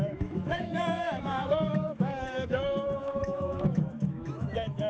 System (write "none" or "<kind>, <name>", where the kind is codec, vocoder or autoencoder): autoencoder, DAC-VAE